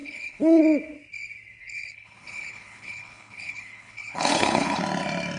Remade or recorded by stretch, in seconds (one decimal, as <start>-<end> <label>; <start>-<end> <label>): 0.0-0.6 remade; 0.6-1.6 recorded; 1.6-4.8 remade; 4.8-5.4 recorded

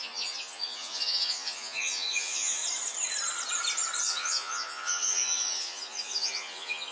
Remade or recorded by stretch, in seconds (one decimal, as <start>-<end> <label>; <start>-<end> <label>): 0.0-2.6 remade; 2.6-4.0 recorded; 4.0-6.9 remade